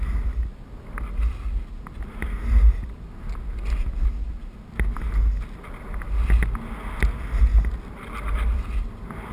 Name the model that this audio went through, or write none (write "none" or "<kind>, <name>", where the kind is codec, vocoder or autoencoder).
none